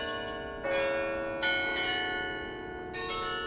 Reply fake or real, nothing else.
real